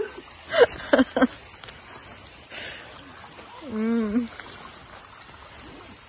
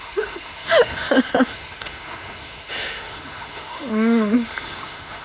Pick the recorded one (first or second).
first